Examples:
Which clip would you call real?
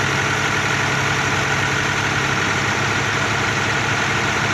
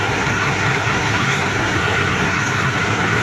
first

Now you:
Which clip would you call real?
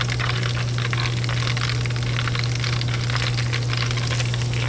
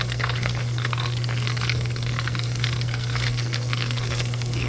first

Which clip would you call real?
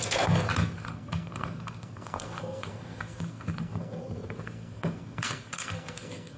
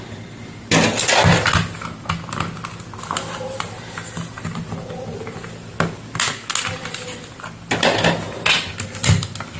second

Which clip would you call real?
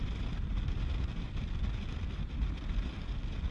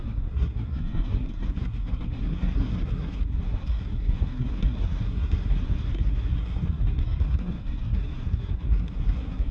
first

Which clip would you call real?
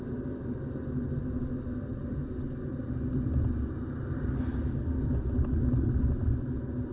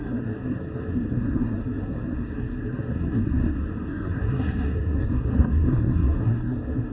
first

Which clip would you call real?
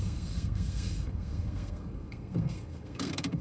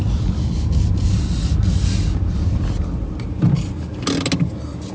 second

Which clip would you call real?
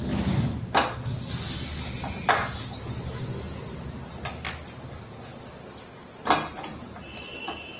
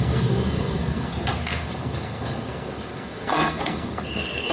first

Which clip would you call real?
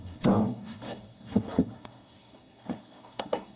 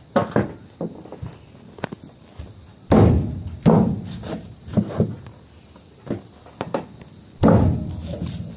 second